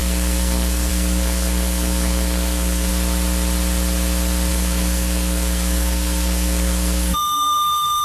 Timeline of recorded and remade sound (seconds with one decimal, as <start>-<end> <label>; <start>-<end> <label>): 0.0-2.9 remade; 2.9-4.5 recorded; 4.5-8.0 remade